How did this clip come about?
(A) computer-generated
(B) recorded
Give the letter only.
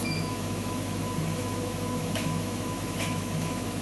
A